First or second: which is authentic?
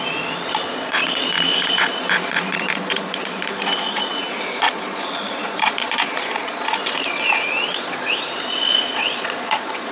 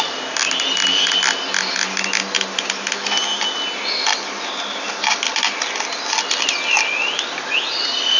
second